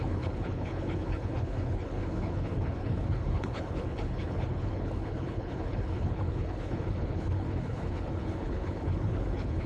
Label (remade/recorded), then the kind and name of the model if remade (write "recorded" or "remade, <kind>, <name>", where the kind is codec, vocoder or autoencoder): remade, codec, HILCodec